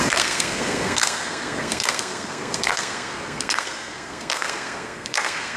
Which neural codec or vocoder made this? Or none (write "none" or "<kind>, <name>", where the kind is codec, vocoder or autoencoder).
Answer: codec, SNAC